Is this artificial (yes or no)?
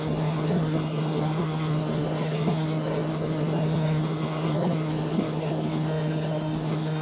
yes